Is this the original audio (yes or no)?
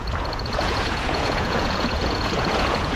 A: no